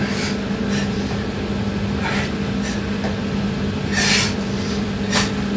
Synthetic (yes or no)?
no